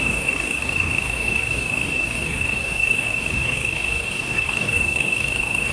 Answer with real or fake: fake